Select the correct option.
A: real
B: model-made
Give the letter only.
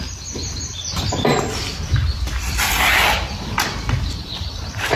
B